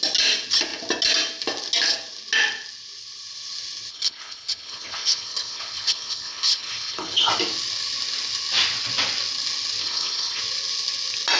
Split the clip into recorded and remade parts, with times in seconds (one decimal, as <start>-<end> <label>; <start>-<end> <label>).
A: 0.0-3.9 recorded; 3.9-7.3 remade; 7.3-9.8 recorded; 9.8-10.4 remade; 10.4-11.4 recorded